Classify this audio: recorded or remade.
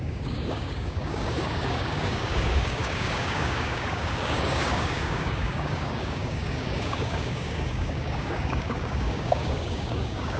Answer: remade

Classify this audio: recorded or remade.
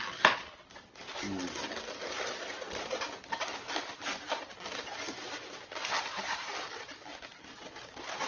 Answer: recorded